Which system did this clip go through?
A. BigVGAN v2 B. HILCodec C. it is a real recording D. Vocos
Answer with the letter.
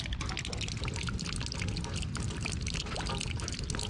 C